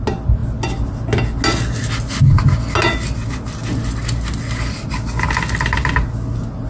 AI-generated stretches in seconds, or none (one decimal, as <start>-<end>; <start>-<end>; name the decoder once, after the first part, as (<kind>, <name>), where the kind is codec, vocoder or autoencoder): none